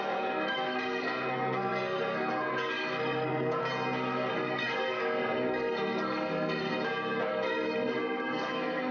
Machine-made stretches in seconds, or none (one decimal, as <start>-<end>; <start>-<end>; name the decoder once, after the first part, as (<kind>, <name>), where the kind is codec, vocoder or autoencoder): 0.0-3.6 (codec, SNAC); 4.3-6.7; 7.3-8.9